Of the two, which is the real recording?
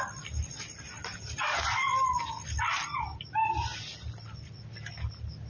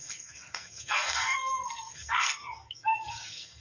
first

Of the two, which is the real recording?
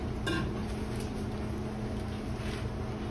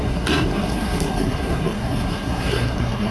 first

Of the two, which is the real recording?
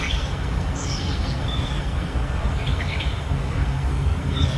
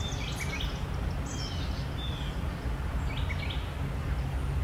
second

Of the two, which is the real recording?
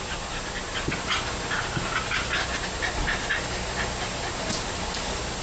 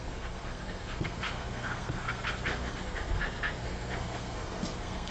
first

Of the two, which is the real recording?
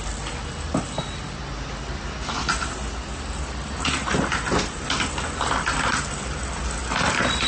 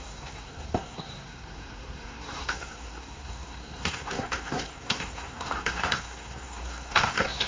first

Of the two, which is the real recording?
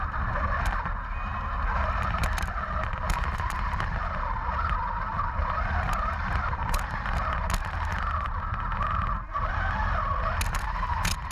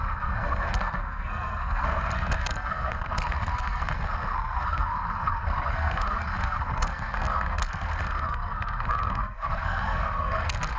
first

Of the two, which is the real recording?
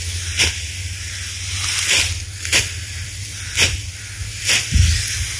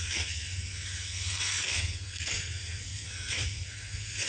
first